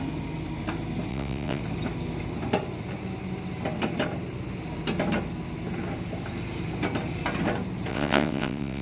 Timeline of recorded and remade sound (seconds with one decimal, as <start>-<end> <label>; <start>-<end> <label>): 0.0-1.1 recorded; 1.1-1.6 remade; 1.6-7.9 recorded; 7.9-8.8 remade